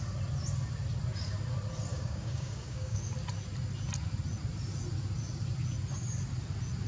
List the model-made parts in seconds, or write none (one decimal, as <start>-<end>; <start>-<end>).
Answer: 1.9-3.0